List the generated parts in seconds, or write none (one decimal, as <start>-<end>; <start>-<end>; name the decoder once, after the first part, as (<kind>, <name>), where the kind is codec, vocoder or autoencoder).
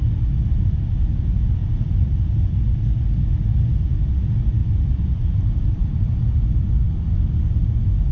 1.6-2.4 (vocoder, BigVGAN v2); 4.6-6.2